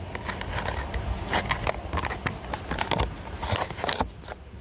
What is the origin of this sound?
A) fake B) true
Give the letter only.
B